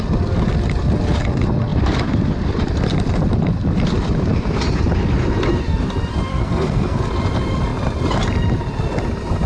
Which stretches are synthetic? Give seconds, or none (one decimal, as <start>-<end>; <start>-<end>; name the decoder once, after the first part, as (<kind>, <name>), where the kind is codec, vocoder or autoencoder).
6.3-7.0 (codec, SNAC)